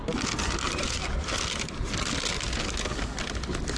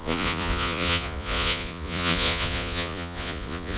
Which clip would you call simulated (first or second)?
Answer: second